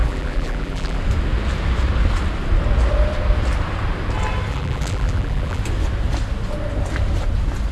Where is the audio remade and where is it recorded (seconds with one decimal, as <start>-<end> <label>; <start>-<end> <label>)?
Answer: 0.0-1.0 remade; 1.0-4.5 recorded; 4.5-5.6 remade; 5.6-7.7 recorded